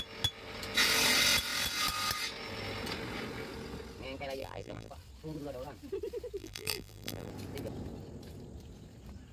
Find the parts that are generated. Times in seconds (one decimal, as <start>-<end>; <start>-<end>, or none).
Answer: 4.4-4.9; 6.4-7.3